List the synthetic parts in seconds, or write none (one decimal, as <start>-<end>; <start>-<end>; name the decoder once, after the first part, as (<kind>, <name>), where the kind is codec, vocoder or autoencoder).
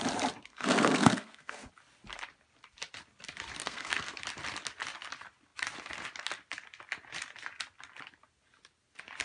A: 0.5-1.7 (codec, SNAC); 3.6-4.2